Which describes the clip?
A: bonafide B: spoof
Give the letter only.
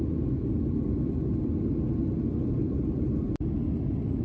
A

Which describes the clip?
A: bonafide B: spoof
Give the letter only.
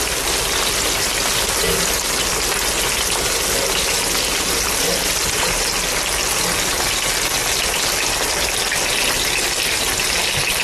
A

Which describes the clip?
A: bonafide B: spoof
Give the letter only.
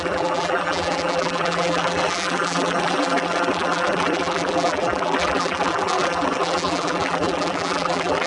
B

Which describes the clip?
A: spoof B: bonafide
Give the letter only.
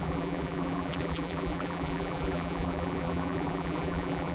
A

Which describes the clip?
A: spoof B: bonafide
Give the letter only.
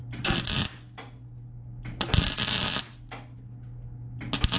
B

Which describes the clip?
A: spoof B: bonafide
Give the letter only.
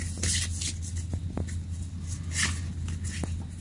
B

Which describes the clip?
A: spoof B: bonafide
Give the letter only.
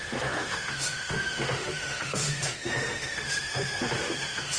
A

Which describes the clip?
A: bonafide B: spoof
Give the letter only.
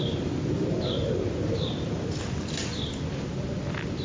A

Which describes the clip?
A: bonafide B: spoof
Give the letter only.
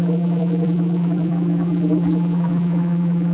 B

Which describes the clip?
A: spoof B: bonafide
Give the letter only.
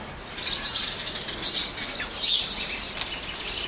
B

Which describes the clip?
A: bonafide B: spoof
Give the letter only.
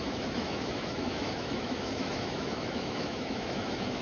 B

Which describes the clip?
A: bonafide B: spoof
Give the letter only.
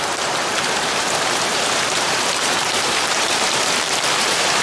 B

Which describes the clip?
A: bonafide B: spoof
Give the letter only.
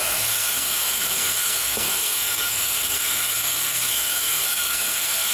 B